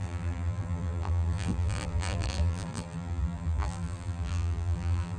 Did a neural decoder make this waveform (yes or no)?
yes